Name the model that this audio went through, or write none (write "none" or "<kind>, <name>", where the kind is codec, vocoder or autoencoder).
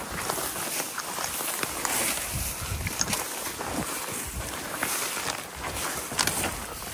none